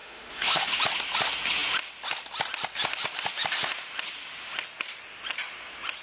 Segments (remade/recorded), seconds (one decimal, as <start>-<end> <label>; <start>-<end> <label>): 0.0-0.8 remade; 0.8-6.0 recorded